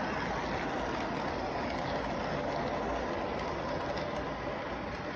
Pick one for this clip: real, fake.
real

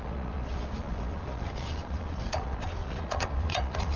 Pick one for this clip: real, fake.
fake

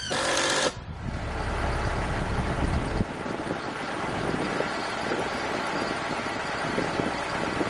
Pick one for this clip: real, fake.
real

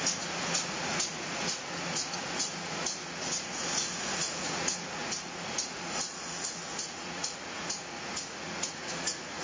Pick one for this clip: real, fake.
fake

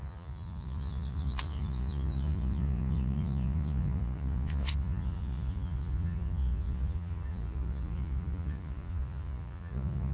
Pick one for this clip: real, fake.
fake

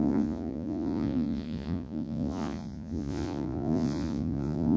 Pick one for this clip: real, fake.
fake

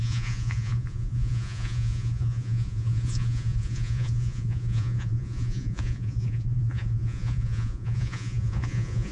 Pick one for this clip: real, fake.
fake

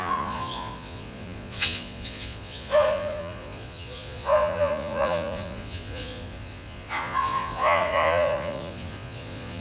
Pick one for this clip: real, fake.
fake